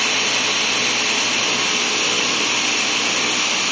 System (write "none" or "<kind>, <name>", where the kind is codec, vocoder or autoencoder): none